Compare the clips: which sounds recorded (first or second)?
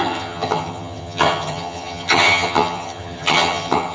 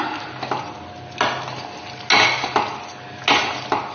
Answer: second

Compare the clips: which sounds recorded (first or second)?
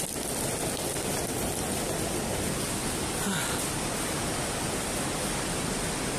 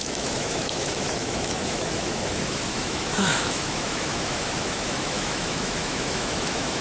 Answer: first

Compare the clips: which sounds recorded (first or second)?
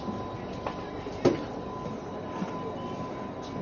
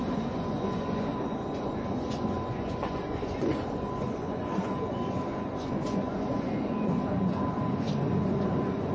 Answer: first